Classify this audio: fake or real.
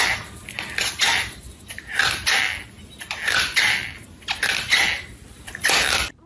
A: real